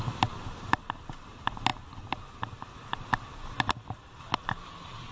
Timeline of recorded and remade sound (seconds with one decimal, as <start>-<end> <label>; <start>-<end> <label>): 0.0-5.1 recorded